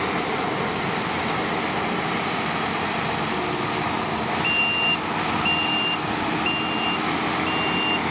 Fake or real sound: real